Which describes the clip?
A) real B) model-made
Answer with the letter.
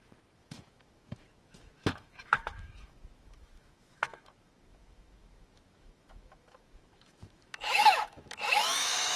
B